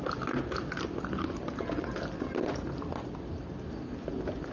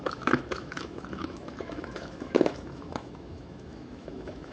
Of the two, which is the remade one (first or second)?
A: second